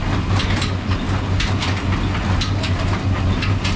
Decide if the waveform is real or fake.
real